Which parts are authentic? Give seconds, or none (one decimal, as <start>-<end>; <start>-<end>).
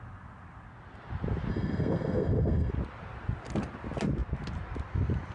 0.0-1.5; 2.7-5.3